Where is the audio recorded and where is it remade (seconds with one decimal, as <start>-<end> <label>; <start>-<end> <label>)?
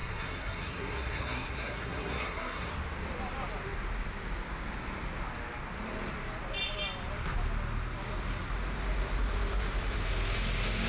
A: 0.0-2.7 remade; 2.7-10.9 recorded